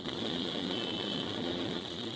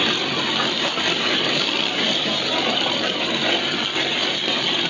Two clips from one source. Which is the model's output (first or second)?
first